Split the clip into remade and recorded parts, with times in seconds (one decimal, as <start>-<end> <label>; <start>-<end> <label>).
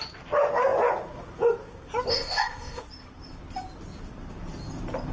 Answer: 0.0-2.1 recorded; 2.1-2.8 remade; 2.8-5.1 recorded